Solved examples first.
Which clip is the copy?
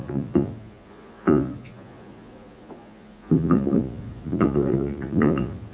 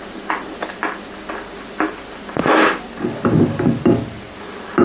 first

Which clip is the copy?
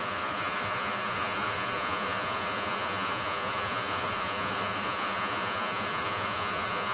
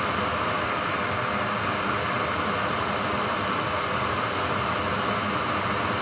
first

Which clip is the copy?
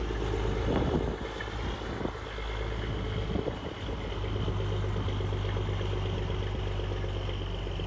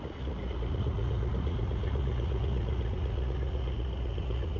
second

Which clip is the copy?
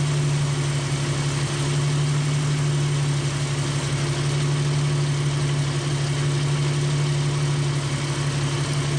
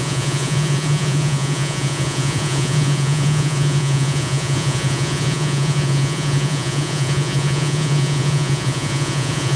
second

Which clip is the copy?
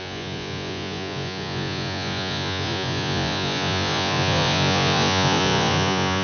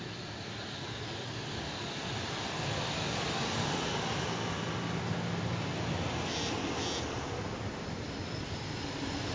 first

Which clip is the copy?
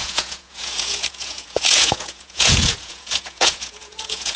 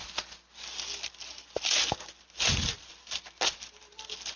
first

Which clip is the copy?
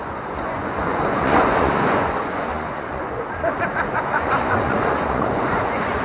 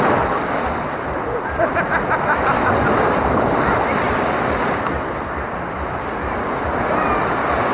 first